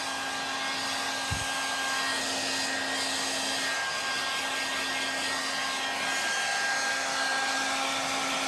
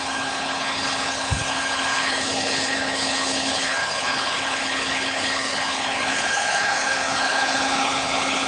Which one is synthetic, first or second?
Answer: second